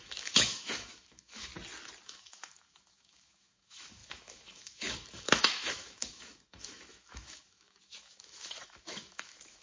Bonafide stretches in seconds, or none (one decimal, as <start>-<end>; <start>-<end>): 1.5-2.1